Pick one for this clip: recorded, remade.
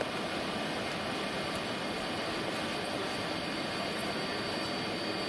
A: recorded